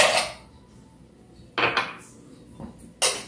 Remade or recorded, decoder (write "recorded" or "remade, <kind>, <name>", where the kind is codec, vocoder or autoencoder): recorded